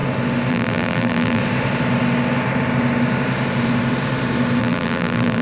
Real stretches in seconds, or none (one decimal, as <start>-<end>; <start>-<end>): 0.0-0.5; 1.4-4.6